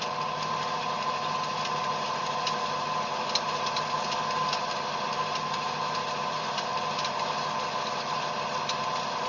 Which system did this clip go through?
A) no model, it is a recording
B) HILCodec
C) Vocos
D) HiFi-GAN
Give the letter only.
A